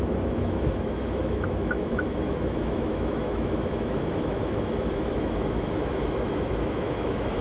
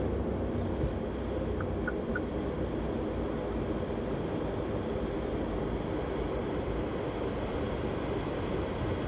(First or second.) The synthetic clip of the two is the first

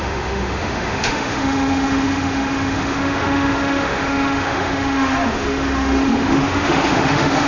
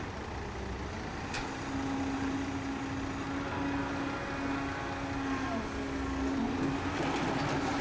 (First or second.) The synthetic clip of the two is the first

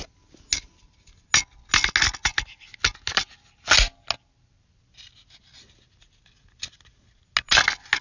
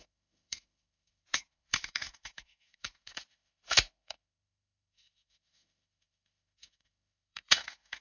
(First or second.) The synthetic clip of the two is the second